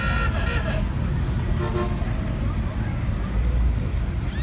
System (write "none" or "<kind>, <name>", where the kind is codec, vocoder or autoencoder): none